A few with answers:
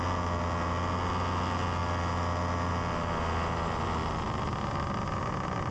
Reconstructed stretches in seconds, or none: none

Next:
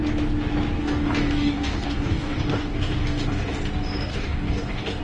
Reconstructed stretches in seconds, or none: 0.8-3.6 (codec, DAC); 4.1-5.0

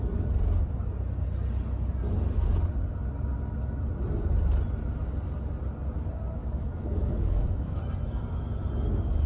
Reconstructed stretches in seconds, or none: 6.4-7.8 (codec, DAC)